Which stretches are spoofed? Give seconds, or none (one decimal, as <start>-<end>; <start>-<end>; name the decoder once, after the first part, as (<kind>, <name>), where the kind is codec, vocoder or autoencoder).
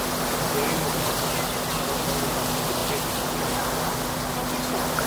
none